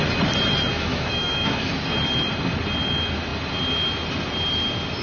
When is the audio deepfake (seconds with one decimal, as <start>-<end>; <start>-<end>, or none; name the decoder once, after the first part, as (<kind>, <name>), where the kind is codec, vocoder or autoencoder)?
0.7-1.7 (autoencoder, DAC-VAE)